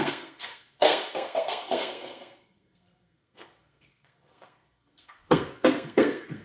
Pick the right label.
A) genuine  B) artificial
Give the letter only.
B